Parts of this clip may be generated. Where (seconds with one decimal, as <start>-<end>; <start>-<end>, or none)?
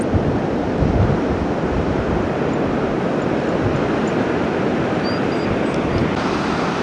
none